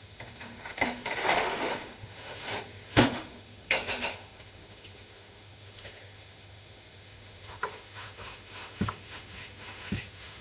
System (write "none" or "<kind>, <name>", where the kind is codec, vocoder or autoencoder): autoencoder, DAC-VAE